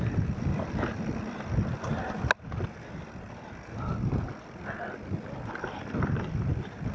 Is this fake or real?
real